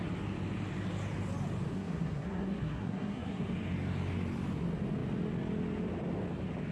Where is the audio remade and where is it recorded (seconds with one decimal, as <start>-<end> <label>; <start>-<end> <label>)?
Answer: 0.0-1.7 recorded; 1.7-3.5 remade; 3.5-6.7 recorded